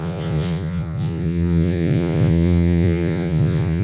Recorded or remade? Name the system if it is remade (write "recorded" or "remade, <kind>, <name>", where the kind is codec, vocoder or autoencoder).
remade, vocoder, Vocos